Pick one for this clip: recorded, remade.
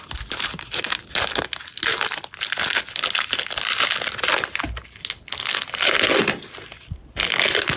recorded